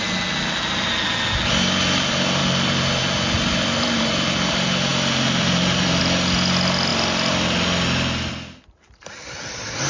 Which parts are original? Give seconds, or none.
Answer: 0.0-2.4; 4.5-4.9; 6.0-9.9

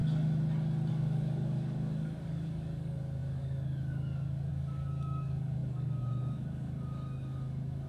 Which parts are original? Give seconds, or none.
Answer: 0.0-0.9

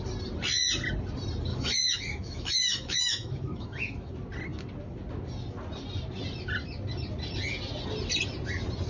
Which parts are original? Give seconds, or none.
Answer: 0.0-1.5; 4.1-8.9

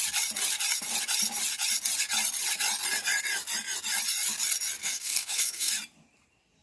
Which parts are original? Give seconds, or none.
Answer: 0.0-4.8; 5.7-6.6

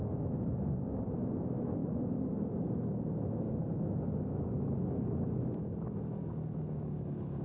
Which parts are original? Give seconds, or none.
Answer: 0.0-1.8; 2.8-7.4

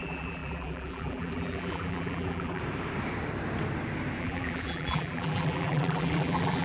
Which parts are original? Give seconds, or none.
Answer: 2.6-4.2